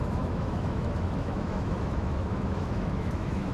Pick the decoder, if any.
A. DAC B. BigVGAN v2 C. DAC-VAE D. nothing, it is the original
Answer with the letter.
C